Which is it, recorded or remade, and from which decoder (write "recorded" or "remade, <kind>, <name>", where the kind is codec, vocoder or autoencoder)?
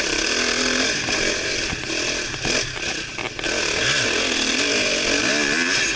recorded